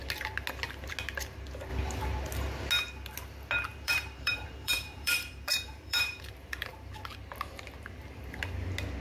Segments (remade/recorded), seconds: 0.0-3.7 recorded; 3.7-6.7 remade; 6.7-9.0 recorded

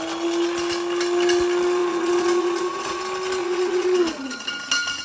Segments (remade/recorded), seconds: 0.0-1.8 recorded; 1.8-3.0 remade; 3.0-3.4 recorded; 3.4-4.4 remade; 4.4-5.0 recorded